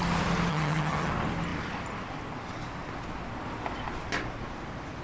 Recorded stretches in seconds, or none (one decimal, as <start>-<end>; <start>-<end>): 0.0-0.5; 1.1-5.0